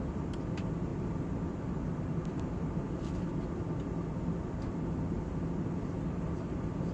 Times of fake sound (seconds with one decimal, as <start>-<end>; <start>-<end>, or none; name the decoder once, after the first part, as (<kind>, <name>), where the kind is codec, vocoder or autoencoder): none